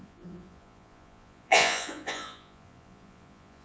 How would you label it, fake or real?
fake